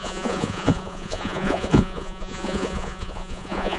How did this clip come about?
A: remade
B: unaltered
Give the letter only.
A